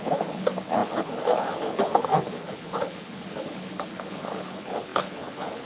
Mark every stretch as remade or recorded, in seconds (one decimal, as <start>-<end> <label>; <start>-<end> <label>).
0.0-5.7 remade